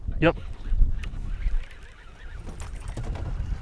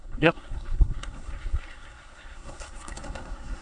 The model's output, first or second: second